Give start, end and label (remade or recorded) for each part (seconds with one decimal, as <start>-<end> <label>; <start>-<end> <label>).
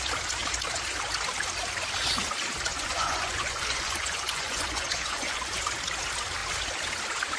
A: 0.0-2.7 recorded; 2.7-5.6 remade; 5.6-7.4 recorded